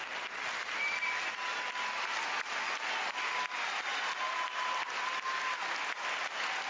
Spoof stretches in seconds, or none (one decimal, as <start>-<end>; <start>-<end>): none